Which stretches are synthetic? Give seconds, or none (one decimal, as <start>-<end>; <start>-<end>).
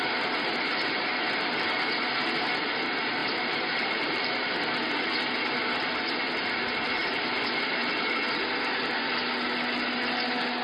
1.1-1.9; 3.2-4.4; 7.0-7.9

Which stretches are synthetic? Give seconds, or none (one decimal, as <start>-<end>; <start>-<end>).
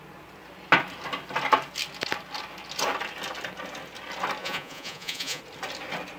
4.4-5.4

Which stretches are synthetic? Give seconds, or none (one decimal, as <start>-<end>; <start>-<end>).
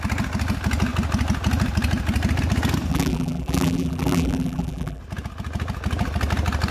2.9-5.0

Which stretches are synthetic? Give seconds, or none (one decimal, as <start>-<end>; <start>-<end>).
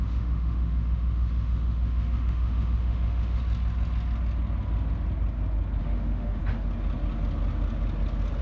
0.0-3.4; 5.8-6.4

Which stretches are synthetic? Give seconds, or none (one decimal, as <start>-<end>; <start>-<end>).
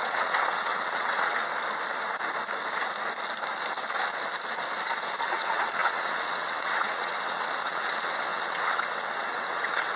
0.0-1.4; 5.2-10.0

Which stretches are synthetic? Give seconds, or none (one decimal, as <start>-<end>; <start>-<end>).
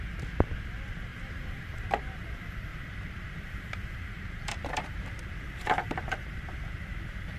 1.1-1.8; 2.7-5.2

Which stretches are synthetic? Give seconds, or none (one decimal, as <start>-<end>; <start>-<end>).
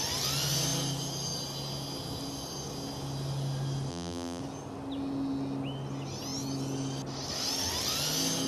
3.9-4.4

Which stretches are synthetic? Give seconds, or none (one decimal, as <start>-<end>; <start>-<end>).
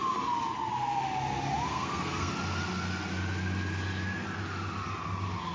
1.7-2.3